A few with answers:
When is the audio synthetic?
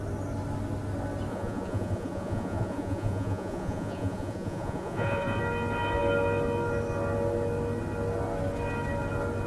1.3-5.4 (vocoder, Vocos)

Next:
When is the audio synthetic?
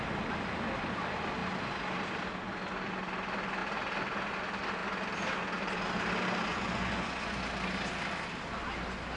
6.5-7.4 (vocoder, Vocos)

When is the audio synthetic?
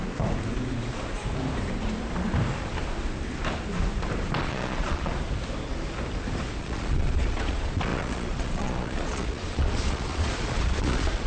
4.4-5.1 (vocoder, Vocos); 6.6-11.3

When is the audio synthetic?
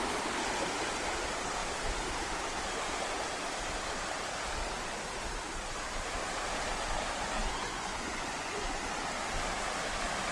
7.4-8.8 (vocoder, Vocos)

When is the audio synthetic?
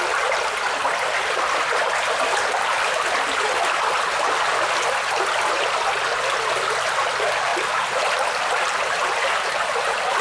none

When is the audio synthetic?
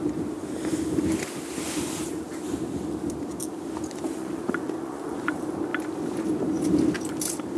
4.1-5.3 (vocoder, Vocos)